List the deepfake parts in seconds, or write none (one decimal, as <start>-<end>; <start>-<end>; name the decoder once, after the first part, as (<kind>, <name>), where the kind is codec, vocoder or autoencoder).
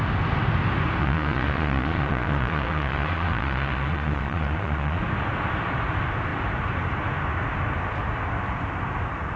1.0-5.0 (vocoder, Vocos)